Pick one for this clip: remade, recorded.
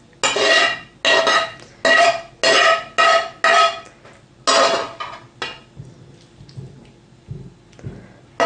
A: recorded